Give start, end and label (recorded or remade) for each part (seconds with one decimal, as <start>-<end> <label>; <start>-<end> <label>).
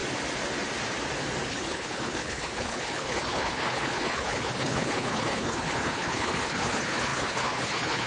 0.0-1.5 recorded; 1.5-8.1 remade